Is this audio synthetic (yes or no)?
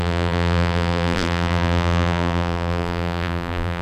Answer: yes